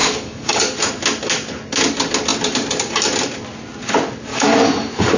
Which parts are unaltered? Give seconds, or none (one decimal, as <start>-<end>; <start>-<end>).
0.6-4.3